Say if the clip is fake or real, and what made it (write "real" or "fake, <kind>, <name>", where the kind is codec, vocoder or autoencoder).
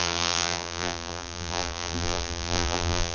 fake, vocoder, BigVGAN v2